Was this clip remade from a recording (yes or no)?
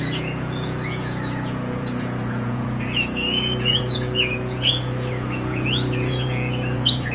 yes